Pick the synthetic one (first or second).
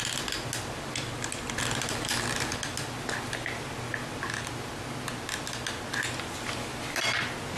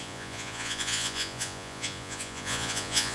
second